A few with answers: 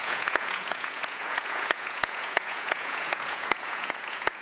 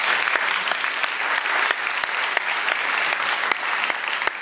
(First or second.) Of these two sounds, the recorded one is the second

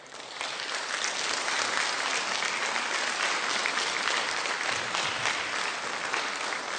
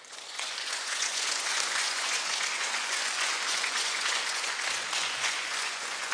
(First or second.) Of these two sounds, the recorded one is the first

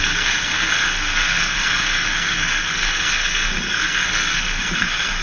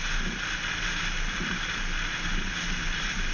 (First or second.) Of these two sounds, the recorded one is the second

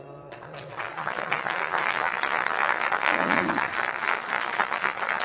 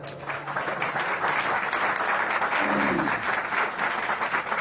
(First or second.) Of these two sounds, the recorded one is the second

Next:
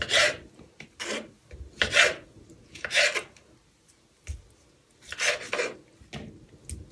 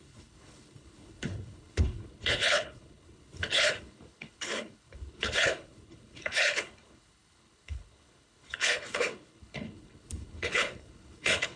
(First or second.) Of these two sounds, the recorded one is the first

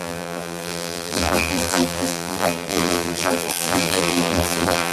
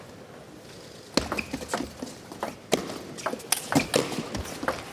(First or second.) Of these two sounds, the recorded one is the second